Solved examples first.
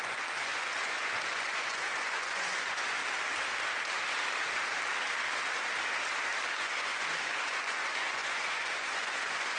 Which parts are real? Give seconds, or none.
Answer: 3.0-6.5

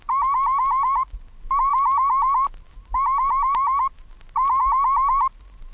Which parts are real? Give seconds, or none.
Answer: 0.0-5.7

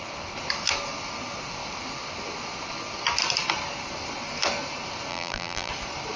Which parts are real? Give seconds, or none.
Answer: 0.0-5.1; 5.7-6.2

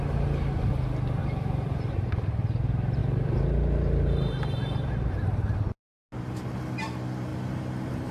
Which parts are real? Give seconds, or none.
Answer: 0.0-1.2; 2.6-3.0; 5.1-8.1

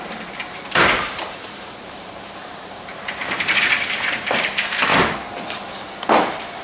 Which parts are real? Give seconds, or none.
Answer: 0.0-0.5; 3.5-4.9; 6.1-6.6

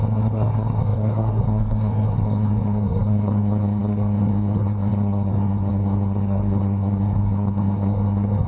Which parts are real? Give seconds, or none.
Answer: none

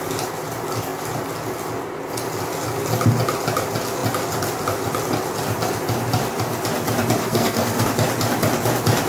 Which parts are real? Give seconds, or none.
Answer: 0.0-7.2; 7.9-9.1